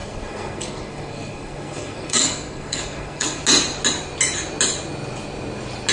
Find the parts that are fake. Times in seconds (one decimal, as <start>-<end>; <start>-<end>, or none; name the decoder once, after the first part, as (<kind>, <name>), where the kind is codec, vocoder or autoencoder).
0.0-3.4 (codec, SNAC)